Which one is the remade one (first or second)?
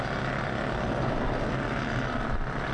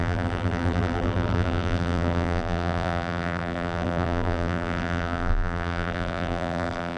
second